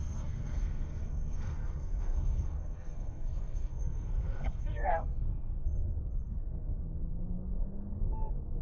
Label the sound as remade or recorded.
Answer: remade